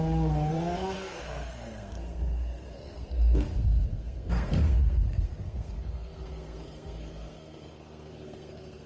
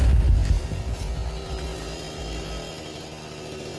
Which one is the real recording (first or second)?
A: second